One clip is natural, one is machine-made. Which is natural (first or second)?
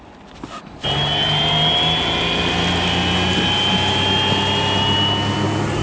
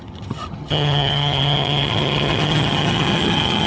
first